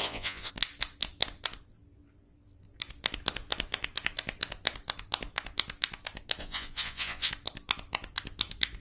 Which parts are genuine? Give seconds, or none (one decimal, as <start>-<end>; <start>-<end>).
0.5-6.4; 7.3-8.8